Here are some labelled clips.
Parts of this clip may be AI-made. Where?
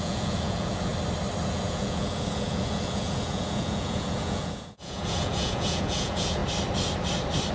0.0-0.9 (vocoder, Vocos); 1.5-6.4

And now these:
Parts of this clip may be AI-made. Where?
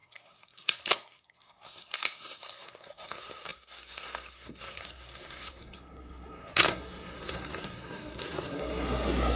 0.0-9.4 (codec, SNAC)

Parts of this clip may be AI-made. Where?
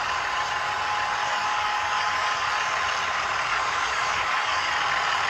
1.2-2.5 (codec, DAC); 3.5-4.7